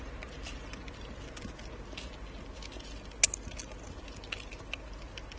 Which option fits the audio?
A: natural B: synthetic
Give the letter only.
A